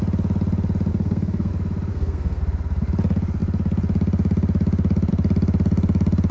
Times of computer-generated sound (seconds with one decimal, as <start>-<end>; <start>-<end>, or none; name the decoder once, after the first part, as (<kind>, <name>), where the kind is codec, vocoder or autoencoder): 0.9-1.5 (codec, SNAC); 1.9-2.4